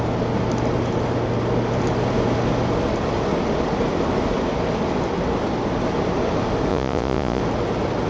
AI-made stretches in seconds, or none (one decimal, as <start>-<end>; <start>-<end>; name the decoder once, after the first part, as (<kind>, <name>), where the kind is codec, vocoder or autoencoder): 6.7-7.4 (vocoder, Vocos)